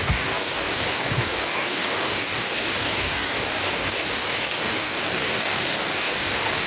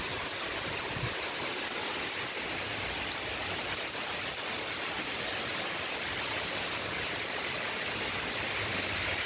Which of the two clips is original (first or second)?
second